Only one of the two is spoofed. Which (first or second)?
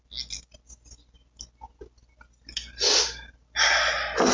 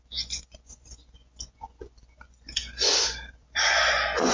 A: second